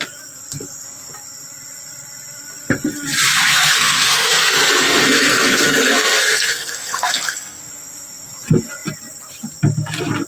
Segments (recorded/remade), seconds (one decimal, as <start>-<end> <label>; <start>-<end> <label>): 0.0-3.5 recorded; 3.5-7.6 remade; 7.6-10.3 recorded